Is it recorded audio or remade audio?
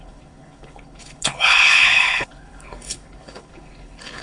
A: remade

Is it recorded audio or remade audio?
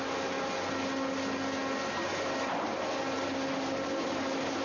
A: recorded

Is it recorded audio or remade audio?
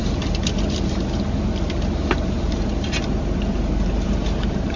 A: recorded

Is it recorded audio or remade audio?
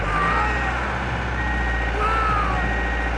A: recorded